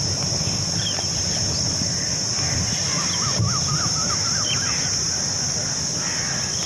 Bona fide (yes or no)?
yes